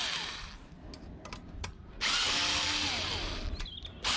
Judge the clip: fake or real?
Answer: real